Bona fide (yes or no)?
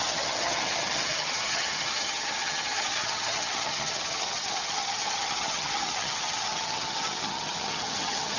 no